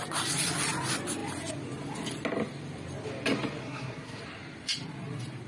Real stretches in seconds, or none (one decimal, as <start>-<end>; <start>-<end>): 0.0-3.6; 4.2-5.5